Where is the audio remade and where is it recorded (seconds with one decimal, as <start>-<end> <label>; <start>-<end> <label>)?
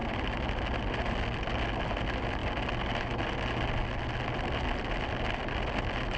0.0-6.2 recorded